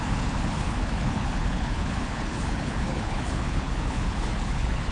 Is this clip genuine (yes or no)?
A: no